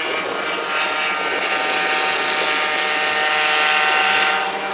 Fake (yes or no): no